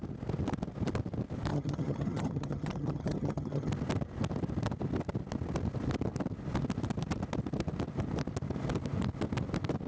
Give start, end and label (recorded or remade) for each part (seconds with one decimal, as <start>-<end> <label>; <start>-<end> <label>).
0.0-1.5 recorded; 1.5-3.7 remade; 3.7-9.9 recorded